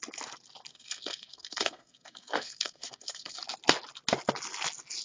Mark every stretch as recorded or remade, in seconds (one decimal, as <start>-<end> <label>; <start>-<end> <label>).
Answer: 0.0-0.7 recorded; 0.7-3.4 remade; 3.4-5.0 recorded